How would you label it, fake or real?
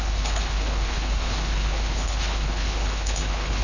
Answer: fake